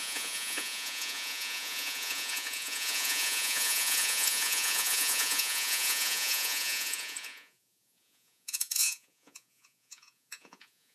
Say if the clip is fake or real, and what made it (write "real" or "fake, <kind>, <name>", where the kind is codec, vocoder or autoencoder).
fake, vocoder, Vocos